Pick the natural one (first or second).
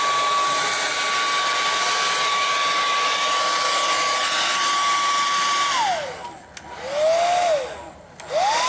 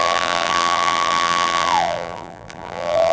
first